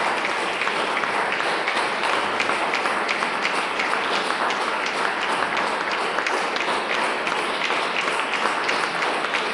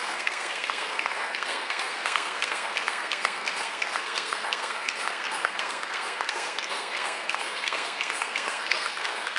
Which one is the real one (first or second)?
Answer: first